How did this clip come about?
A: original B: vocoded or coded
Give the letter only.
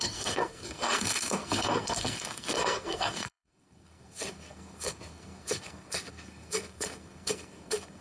B